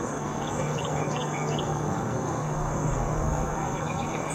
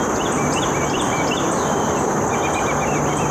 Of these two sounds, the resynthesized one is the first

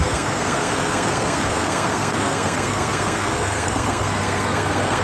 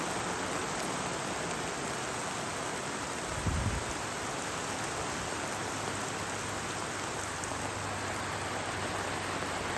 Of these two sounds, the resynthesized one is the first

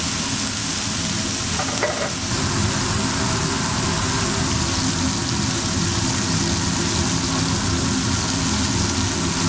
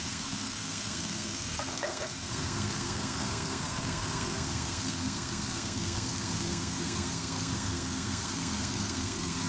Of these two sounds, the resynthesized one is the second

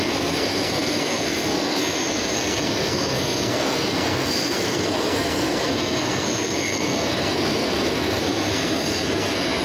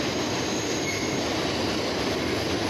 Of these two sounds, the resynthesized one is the first